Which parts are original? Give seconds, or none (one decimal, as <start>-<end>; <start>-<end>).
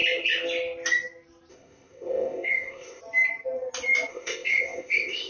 0.0-1.5; 3.0-4.1